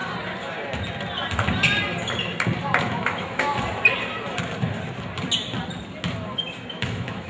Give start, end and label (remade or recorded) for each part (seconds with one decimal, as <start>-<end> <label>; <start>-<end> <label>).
0.0-2.8 recorded; 2.8-3.5 remade; 3.5-6.7 recorded; 6.7-7.3 remade